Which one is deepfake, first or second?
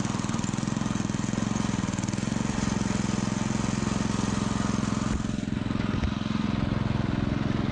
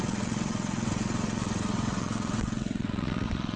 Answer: second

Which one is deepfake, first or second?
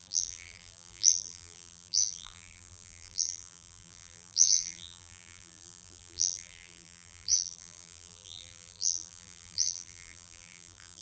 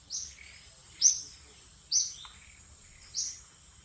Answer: first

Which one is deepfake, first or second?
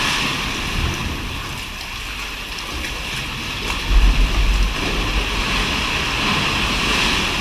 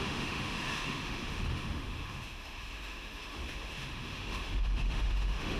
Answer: second